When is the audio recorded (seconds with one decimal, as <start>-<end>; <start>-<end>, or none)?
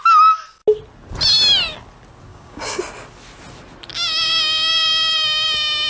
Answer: 0.0-2.3; 2.8-5.9